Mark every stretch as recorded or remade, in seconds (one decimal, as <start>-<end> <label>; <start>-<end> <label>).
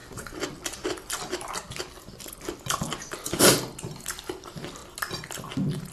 0.0-3.4 remade; 3.4-5.9 recorded